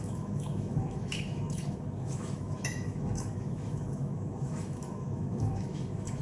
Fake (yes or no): yes